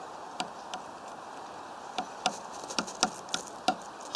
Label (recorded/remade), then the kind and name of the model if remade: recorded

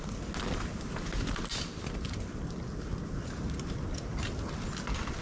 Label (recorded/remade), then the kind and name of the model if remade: recorded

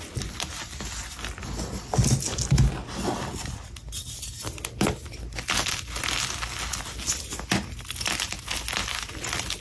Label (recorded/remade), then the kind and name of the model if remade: recorded